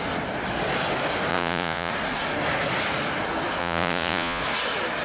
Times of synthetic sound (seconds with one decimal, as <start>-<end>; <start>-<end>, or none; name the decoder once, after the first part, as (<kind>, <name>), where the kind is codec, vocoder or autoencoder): 1.3-1.9 (vocoder, Vocos); 3.6-4.4